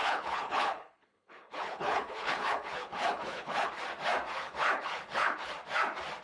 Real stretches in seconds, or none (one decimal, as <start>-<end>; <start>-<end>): 3.7-4.4; 5.5-6.2